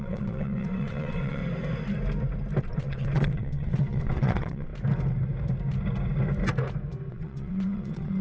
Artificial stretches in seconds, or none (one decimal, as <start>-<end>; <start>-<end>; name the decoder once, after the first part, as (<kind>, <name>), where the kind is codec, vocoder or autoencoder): 0.0-1.4 (vocoder, WaveNeXt); 2.6-4.7; 7.1-8.2